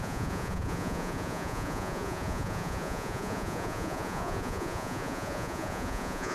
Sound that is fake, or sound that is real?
fake